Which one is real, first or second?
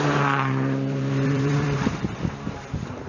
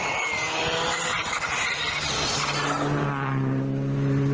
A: second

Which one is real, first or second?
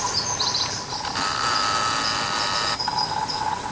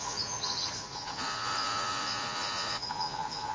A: first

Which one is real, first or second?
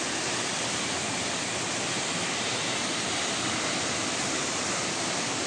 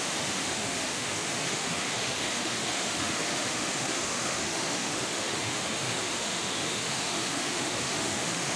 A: first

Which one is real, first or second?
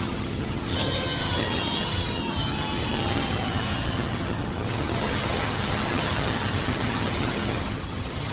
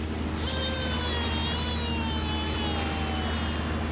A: second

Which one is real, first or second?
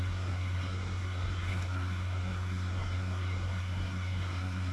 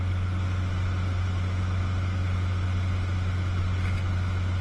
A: second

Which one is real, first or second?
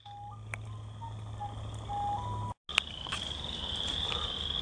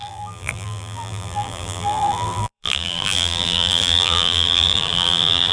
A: first